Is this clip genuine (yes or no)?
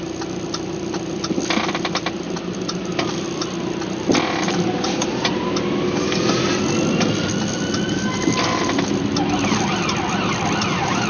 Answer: yes